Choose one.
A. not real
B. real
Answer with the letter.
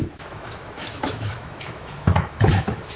A